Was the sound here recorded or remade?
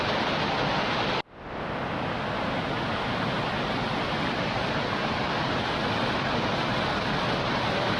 recorded